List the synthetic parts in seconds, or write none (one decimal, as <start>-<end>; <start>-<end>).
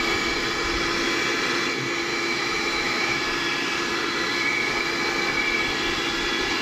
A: 2.1-3.2